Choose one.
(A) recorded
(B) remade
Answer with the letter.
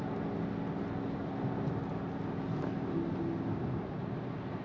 A